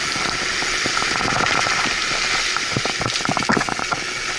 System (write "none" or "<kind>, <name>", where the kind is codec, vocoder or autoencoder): none